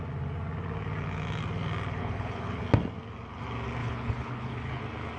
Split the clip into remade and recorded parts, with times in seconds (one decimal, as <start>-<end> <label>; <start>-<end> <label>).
0.0-2.0 recorded; 2.0-2.6 remade; 2.6-3.8 recorded; 3.8-4.8 remade; 4.8-5.2 recorded